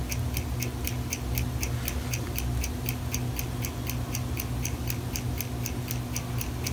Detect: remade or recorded recorded